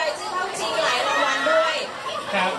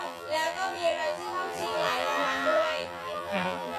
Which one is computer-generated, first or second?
second